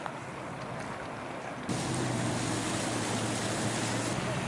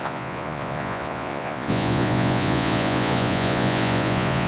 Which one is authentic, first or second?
first